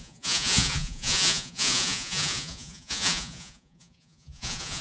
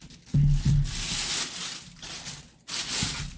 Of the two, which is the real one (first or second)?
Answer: second